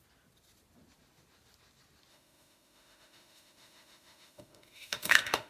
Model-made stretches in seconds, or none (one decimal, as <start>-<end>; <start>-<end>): 2.1-5.5